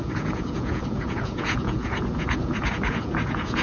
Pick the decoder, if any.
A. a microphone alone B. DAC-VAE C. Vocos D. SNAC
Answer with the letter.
C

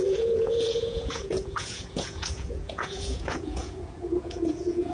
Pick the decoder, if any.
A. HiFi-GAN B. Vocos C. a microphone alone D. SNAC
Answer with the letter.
B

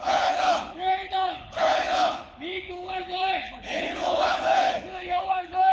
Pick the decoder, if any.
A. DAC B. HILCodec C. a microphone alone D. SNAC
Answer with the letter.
B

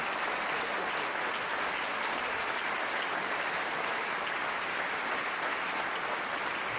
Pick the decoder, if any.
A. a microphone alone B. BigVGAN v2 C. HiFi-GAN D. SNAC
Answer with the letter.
A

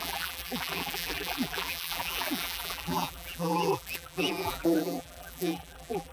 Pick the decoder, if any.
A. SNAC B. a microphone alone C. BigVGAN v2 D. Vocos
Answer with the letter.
C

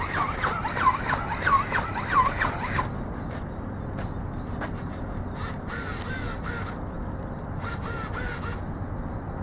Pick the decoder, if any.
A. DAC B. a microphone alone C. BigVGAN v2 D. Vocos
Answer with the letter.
B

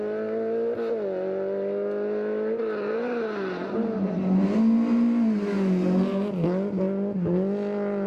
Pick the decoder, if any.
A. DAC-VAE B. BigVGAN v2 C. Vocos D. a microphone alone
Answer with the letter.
D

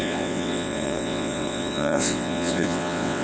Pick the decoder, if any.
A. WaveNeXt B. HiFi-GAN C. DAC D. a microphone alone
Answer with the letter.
A